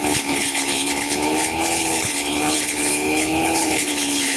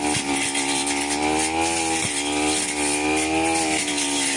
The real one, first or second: second